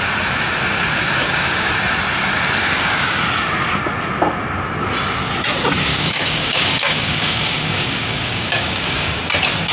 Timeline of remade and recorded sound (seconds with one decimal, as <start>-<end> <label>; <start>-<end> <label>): 0.0-1.2 recorded; 1.2-1.7 remade; 1.7-2.6 recorded; 2.6-3.2 remade; 3.2-5.9 recorded; 5.9-9.2 remade; 9.2-9.7 recorded